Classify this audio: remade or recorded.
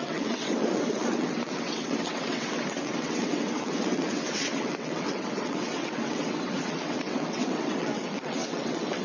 remade